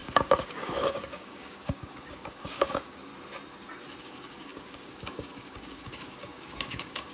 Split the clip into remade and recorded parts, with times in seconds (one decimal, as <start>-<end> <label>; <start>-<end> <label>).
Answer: 0.0-3.1 remade; 3.1-4.0 recorded; 4.0-7.1 remade